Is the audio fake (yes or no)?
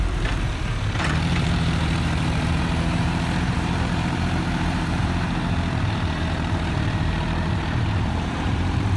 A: yes